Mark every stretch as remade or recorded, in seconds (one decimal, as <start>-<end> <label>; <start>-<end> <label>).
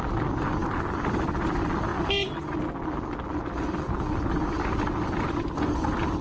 0.0-6.2 recorded